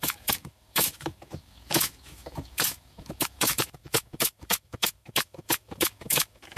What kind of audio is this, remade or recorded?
remade